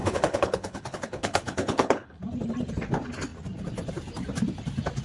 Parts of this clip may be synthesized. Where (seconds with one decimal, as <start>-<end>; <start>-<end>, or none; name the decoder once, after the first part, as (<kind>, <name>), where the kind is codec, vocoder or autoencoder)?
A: 0.0-2.2 (codec, HILCodec)